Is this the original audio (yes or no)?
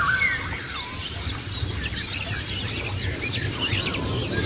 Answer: yes